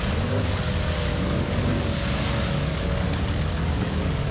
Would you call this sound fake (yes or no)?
yes